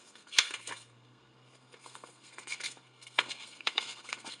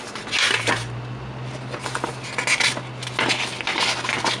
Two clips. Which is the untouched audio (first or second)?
second